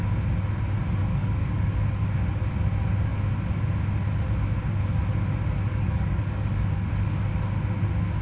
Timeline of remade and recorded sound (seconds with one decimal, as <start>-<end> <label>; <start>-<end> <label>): 0.0-1.0 recorded; 1.0-2.0 remade; 2.0-5.7 recorded; 5.7-6.9 remade; 6.9-8.2 recorded

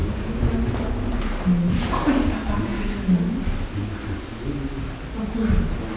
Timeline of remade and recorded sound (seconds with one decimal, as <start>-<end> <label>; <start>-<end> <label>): 0.0-0.5 remade; 0.5-6.0 recorded

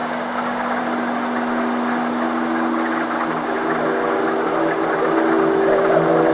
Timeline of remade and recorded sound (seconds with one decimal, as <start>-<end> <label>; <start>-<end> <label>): 0.0-0.8 remade; 0.8-6.3 recorded

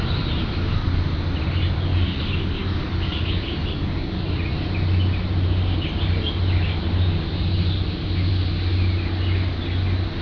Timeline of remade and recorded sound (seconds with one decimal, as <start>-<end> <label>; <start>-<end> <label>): 0.0-1.9 recorded; 1.9-4.3 remade; 4.3-10.2 recorded

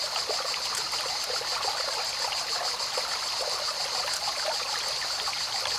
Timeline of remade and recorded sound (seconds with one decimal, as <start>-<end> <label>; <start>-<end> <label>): 0.0-5.8 recorded

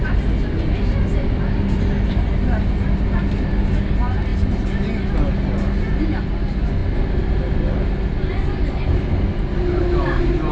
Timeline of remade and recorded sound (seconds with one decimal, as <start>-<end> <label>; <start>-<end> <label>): 0.0-10.5 recorded

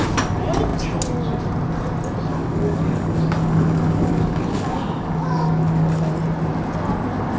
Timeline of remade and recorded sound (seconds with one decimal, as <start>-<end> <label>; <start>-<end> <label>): 0.0-2.3 recorded; 2.3-6.1 remade; 6.1-7.4 recorded